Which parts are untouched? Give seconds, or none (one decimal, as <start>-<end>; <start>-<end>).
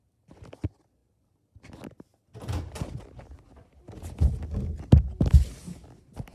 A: 0.0-6.3